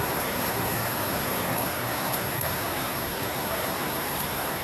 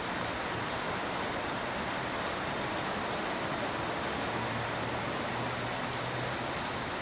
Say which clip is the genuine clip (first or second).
second